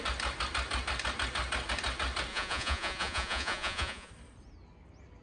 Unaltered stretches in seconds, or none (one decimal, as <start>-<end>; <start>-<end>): 0.0-2.3; 4.1-5.2